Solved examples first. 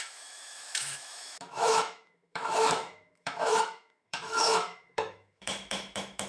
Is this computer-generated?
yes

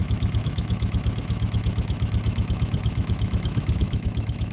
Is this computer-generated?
yes